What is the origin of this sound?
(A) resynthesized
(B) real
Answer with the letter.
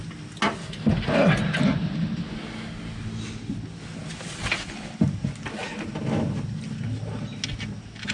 B